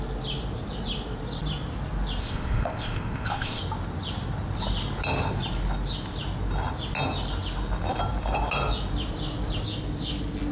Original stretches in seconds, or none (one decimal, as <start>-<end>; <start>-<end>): 0.0-2.2; 3.6-10.5